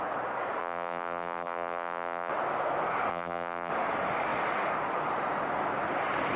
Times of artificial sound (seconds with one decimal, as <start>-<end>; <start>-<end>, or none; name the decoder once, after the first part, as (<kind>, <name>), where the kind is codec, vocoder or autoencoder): 0.6-2.3 (vocoder, BigVGAN v2); 3.1-3.7